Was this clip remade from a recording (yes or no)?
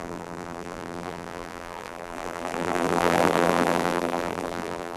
yes